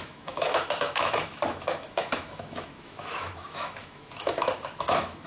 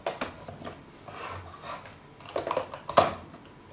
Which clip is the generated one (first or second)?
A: first